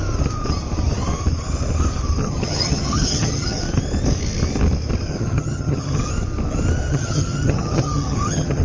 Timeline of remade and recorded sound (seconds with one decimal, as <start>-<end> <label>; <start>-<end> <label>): 0.0-2.2 recorded; 2.2-3.6 remade; 3.6-5.1 recorded; 5.1-6.1 remade; 6.1-6.9 recorded; 6.9-8.6 remade